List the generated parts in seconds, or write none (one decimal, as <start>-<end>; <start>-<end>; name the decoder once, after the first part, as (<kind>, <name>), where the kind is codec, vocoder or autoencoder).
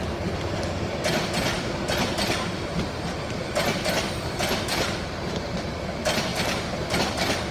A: 6.3-7.0 (vocoder, BigVGAN v2)